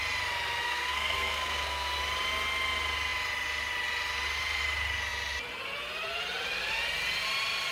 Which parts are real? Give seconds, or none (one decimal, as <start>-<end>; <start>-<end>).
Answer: 0.0-0.6; 2.0-7.7